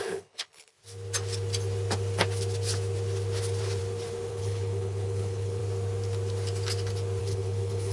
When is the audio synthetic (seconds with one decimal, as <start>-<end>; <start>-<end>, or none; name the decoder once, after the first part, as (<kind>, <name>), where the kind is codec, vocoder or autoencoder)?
0.0-0.7 (codec, HILCodec); 4.3-5.6; 7.2-7.9